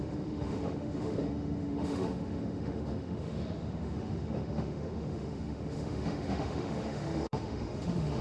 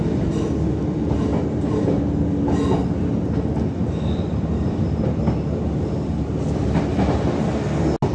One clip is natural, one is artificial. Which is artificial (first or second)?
first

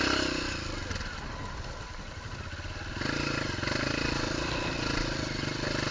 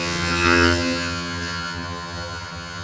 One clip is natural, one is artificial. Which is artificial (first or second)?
second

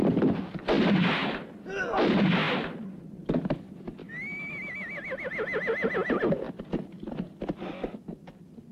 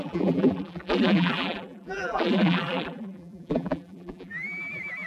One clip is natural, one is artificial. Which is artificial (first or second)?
second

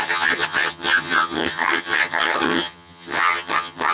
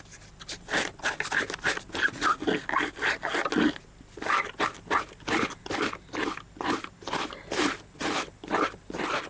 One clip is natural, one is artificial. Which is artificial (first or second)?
first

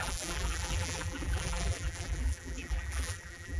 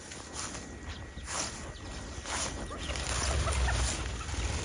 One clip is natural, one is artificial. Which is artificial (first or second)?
first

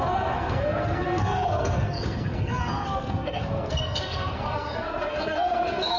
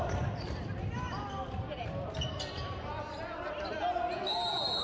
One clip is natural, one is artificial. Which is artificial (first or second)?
first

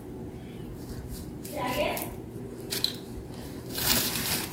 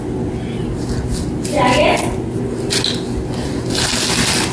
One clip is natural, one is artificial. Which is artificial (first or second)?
first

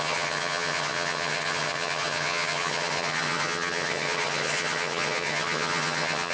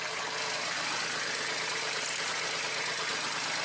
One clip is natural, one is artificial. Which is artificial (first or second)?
first